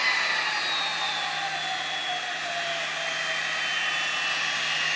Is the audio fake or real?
real